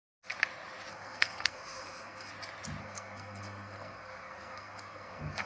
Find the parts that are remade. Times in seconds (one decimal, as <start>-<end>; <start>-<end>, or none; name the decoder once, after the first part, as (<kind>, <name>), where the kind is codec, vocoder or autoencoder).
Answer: 0.9-2.3 (codec, SNAC); 2.8-5.5